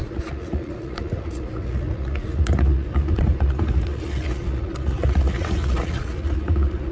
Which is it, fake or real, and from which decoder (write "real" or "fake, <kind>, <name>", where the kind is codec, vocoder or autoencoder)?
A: fake, vocoder, Vocos